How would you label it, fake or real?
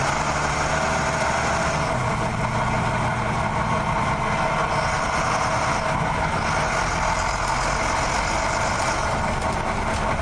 real